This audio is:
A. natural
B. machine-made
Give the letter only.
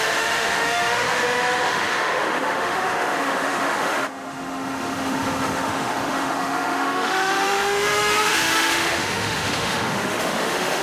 B